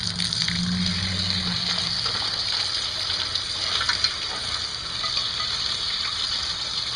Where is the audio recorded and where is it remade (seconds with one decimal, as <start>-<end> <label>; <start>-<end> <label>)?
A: 0.0-7.0 recorded